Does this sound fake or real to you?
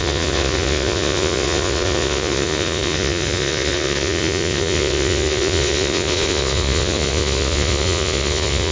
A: fake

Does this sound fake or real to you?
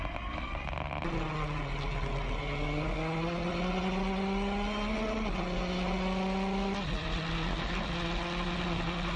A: real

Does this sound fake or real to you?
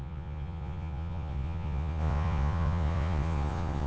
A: fake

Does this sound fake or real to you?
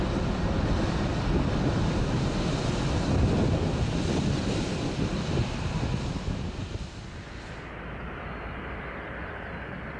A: real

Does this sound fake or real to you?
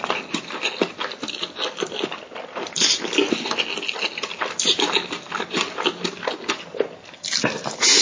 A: real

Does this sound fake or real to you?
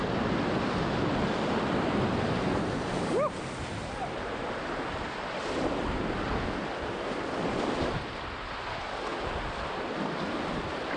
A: real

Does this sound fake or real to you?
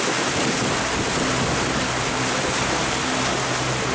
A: real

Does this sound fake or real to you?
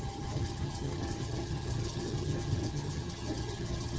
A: fake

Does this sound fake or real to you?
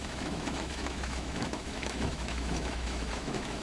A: fake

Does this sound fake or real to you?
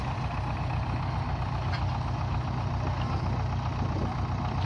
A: real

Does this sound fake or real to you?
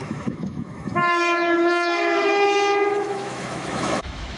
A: fake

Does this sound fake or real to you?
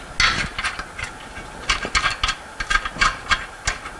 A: real